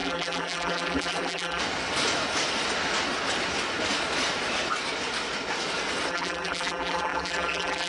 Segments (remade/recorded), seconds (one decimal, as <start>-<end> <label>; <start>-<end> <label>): 0.0-1.6 remade; 1.6-6.1 recorded; 6.1-7.9 remade